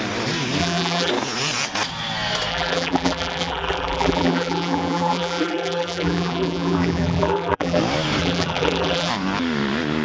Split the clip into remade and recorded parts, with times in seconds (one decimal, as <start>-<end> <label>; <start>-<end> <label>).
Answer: 0.0-0.6 recorded; 0.6-1.1 remade; 1.1-2.5 recorded; 2.5-7.8 remade; 7.8-8.2 recorded; 8.2-9.1 remade; 9.1-10.0 recorded